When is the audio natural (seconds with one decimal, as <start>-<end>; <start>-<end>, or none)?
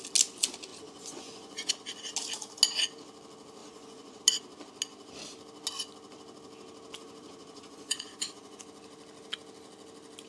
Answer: 0.0-0.7; 1.7-3.6; 4.2-7.0; 8.6-10.3